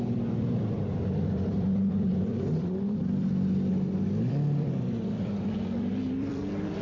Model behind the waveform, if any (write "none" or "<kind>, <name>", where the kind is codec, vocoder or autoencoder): vocoder, BigVGAN v2